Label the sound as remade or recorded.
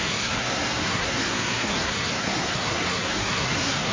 remade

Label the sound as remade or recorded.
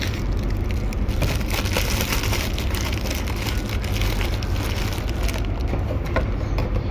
recorded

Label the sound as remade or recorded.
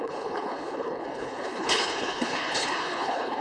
remade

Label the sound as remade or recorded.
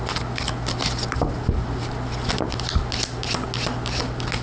recorded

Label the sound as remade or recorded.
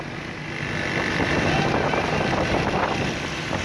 recorded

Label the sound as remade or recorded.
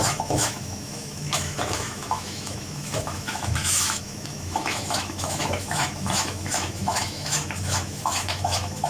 remade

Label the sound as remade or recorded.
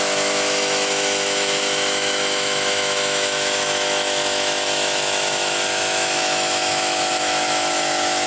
remade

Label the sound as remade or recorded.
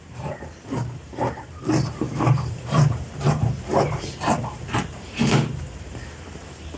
remade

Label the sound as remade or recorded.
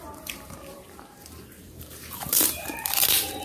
remade